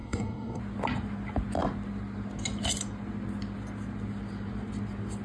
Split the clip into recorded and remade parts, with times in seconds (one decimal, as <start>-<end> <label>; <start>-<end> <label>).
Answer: 0.0-0.6 remade; 0.6-5.2 recorded